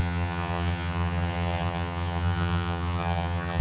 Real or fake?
fake